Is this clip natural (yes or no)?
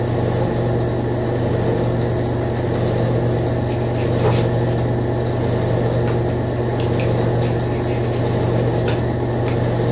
yes